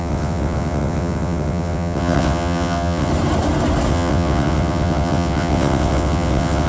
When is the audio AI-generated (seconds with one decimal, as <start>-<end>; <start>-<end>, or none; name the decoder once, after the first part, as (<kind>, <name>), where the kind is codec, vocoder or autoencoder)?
0.0-3.1 (vocoder, WaveNeXt); 3.9-6.7